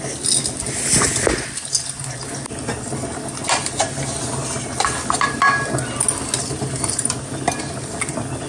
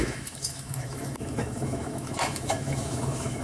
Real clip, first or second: first